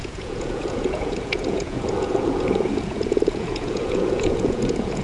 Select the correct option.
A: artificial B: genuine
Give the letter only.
A